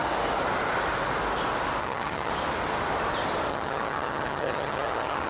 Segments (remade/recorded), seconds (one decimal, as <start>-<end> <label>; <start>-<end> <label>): 0.0-1.8 recorded; 1.8-2.3 remade; 2.3-3.5 recorded; 3.5-5.3 remade